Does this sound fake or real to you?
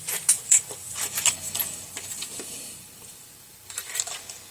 fake